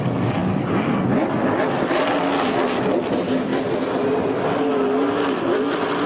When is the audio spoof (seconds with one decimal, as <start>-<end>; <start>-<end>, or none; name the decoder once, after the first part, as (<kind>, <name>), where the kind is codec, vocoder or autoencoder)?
none